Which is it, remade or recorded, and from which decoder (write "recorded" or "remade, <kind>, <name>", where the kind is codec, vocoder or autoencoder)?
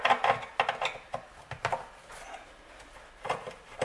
recorded